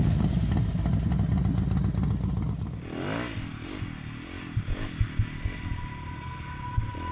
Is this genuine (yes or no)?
yes